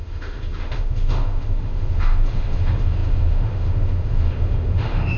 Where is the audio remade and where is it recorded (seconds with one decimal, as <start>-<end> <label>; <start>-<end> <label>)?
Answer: 0.0-5.2 remade